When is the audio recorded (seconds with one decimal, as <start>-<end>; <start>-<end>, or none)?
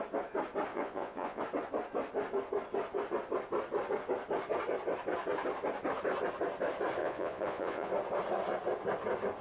0.0-0.7; 1.4-7.0; 7.9-9.4